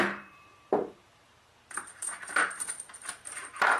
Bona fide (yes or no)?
no